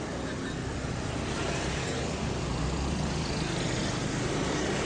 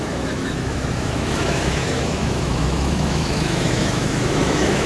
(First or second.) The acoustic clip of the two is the first